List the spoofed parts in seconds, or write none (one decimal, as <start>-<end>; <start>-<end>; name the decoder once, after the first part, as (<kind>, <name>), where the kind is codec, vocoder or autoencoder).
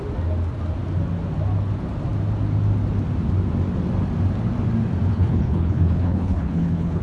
5.1-7.0 (codec, HILCodec)